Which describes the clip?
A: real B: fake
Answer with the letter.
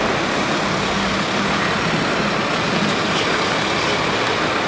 A